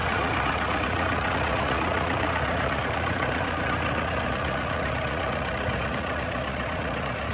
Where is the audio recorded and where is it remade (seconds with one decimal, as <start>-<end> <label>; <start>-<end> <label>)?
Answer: 0.0-7.3 remade